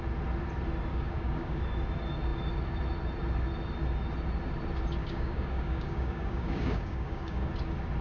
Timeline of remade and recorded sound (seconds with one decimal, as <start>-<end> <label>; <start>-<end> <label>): 0.0-0.9 recorded; 0.9-1.6 remade; 1.6-5.0 recorded; 5.0-7.5 remade; 7.5-8.0 recorded

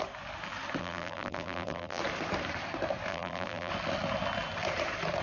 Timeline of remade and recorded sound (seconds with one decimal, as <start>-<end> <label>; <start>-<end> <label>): 0.0-0.8 recorded; 0.8-2.0 remade; 2.0-3.1 recorded; 3.1-3.7 remade; 3.7-5.2 recorded

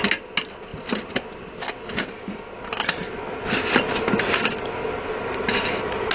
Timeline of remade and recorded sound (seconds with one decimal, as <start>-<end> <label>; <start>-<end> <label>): 0.0-6.1 recorded

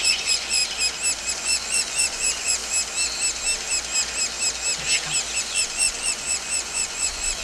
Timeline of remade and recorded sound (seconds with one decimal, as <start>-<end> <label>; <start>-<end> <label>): 0.0-0.6 remade; 0.6-1.3 recorded; 1.3-2.6 remade; 2.6-5.4 recorded; 5.4-7.4 remade

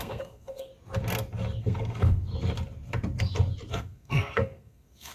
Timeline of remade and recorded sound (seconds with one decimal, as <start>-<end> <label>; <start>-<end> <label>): 0.0-0.7 remade; 0.7-1.6 recorded; 1.6-2.3 remade; 2.3-3.7 recorded; 3.7-5.1 remade

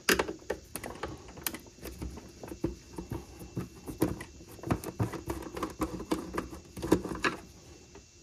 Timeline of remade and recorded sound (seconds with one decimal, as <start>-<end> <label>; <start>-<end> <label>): 0.0-8.2 recorded